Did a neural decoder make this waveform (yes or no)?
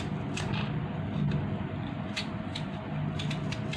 no